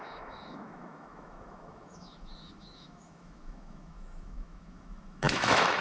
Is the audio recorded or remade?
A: remade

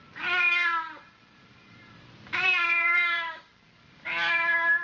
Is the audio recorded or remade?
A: remade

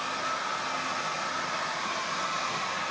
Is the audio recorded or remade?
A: recorded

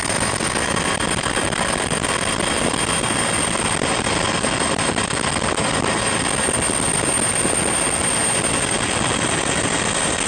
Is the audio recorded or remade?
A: recorded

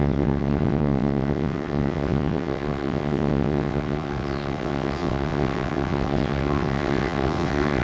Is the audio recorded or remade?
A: remade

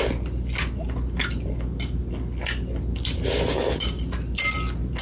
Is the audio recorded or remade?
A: recorded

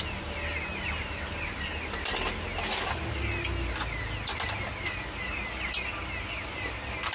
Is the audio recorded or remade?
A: recorded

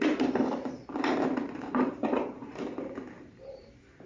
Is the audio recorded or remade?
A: remade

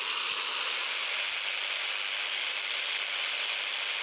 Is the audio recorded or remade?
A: recorded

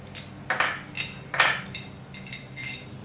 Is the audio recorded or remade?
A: recorded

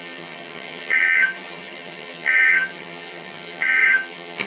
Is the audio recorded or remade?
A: remade